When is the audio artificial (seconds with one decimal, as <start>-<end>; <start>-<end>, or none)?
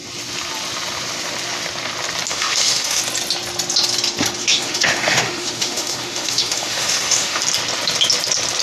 2.3-3.0; 4.4-7.4